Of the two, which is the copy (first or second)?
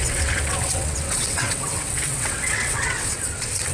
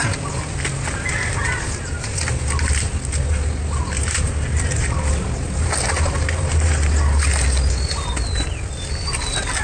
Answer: first